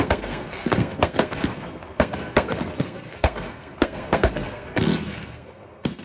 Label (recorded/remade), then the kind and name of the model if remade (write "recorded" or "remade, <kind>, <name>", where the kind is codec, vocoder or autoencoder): remade, codec, SNAC